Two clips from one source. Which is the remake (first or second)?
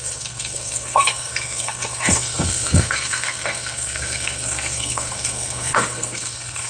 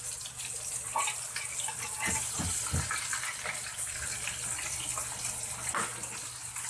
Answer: first